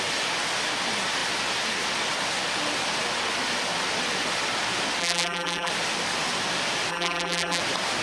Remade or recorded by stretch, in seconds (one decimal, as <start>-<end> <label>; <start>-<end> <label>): 0.0-5.0 recorded; 5.0-5.7 remade; 5.7-6.9 recorded; 6.9-7.6 remade; 7.6-8.0 recorded